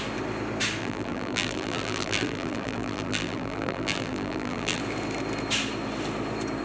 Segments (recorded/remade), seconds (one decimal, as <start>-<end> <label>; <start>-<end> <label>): 0.0-0.8 recorded; 0.8-4.8 remade; 4.8-6.6 recorded